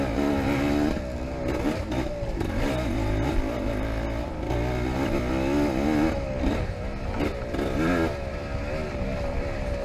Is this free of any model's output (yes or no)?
yes